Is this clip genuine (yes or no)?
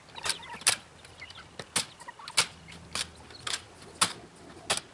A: yes